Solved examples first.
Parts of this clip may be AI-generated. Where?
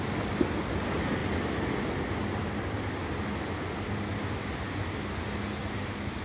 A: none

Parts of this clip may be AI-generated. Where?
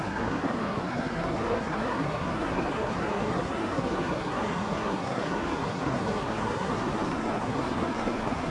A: 0.0-8.5 (codec, SNAC)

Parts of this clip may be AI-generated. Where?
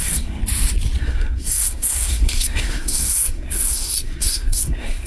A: 0.0-0.4 (codec, SNAC); 1.0-5.1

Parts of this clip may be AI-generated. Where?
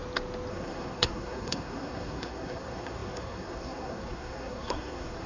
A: 0.5-5.3 (codec, SNAC)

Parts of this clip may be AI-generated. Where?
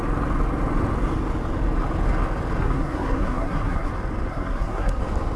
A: 2.6-3.9 (codec, SNAC); 4.3-5.0